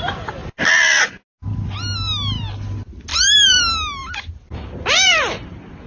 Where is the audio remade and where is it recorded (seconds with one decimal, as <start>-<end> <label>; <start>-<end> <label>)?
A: 0.0-3.1 recorded; 3.1-3.6 remade; 3.6-4.0 recorded; 4.0-5.9 remade